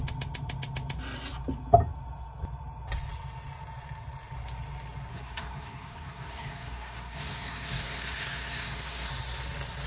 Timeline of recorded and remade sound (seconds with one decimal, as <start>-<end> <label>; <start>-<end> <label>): 0.0-5.1 recorded; 5.1-9.1 remade; 9.1-9.9 recorded